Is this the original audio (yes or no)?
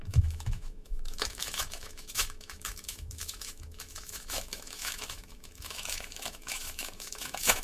no